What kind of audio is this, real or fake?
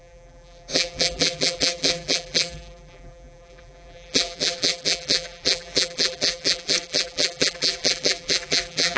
fake